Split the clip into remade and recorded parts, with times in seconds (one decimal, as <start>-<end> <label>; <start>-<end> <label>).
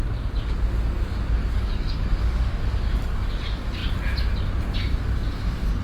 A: 0.0-1.4 recorded; 1.4-3.4 remade; 3.4-5.8 recorded